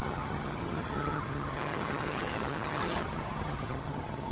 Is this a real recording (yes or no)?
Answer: no